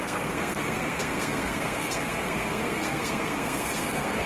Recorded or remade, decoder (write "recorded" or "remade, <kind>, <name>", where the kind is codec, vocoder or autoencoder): remade, codec, SNAC